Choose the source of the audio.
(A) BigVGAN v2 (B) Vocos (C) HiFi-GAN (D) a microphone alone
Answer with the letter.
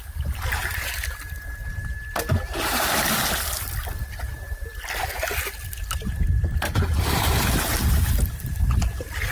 D